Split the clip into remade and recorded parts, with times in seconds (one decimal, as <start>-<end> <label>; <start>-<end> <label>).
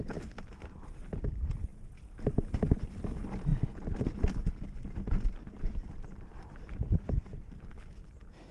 0.0-6.3 recorded; 6.3-8.5 remade